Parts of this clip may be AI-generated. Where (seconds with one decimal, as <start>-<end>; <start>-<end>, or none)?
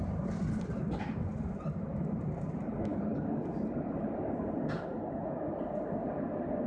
none